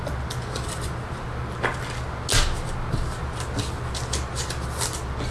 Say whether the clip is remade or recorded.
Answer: recorded